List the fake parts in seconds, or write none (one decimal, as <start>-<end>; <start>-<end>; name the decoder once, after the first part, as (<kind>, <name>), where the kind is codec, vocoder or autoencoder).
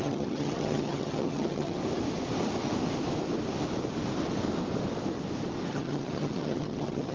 0.0-1.8 (vocoder, HiFi-GAN); 5.7-7.1